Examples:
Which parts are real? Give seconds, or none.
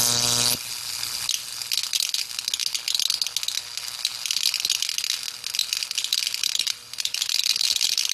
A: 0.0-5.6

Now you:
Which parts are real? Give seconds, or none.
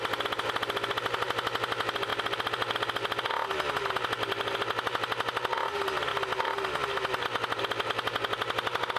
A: 0.0-9.0